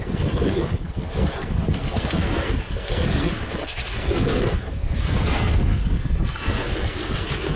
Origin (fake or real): fake